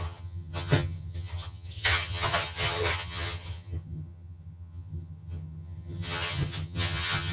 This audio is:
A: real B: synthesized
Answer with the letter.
B